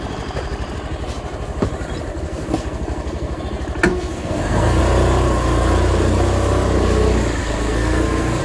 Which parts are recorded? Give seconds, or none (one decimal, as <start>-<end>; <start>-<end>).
0.0-2.1; 3.4-3.9; 4.8-7.4